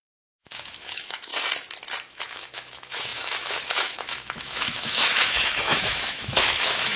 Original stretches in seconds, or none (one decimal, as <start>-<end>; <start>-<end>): 1.3-2.1